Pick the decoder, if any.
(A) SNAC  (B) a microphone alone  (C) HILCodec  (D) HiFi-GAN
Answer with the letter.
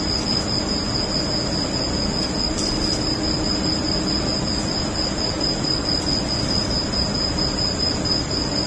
B